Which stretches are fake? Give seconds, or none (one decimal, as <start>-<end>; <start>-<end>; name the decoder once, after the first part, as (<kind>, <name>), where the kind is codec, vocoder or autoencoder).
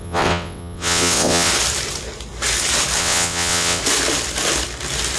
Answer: 0.0-1.5 (vocoder, WaveNeXt); 3.0-3.8